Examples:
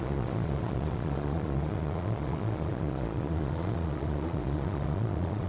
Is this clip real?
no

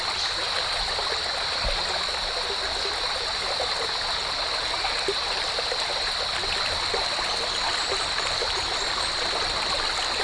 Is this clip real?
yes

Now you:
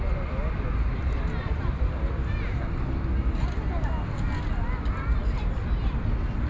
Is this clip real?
yes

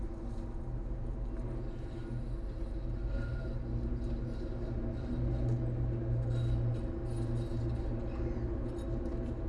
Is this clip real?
yes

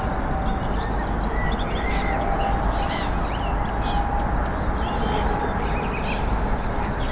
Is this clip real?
yes